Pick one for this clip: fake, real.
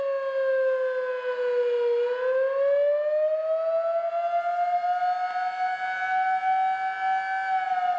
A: real